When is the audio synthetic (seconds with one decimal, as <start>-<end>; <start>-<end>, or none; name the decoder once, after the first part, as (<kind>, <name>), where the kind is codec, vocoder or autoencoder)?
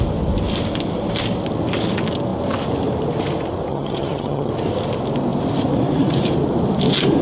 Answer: 3.7-4.5 (vocoder, HiFi-GAN)